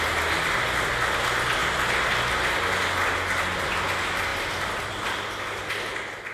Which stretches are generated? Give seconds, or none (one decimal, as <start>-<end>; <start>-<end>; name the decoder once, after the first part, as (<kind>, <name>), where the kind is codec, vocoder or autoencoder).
none